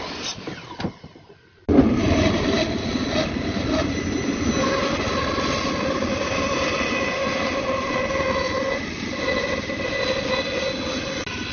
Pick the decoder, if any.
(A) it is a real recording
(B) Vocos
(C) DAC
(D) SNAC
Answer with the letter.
A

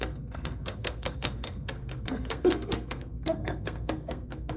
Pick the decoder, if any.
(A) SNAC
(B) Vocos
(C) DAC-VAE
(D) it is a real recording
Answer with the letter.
A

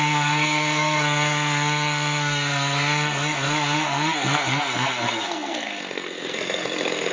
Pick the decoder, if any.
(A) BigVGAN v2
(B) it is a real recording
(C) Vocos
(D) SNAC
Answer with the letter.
D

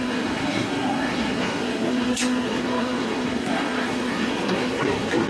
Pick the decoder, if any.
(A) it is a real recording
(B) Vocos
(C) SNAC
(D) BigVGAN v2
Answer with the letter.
C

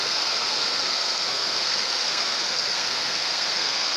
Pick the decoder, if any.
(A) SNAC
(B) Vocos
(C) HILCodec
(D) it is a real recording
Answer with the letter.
A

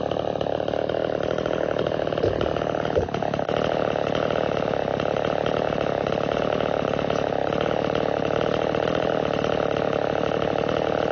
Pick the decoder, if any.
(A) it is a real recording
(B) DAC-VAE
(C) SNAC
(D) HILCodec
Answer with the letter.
A